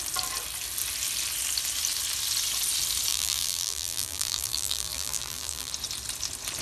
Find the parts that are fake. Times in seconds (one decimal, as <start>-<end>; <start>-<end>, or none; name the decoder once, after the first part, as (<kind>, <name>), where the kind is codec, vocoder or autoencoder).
3.1-5.7 (vocoder, BigVGAN v2)